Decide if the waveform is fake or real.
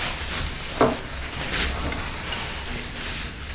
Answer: real